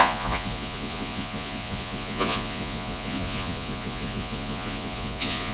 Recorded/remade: remade